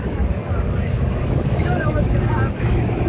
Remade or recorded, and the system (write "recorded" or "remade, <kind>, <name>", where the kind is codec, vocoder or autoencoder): remade, codec, DAC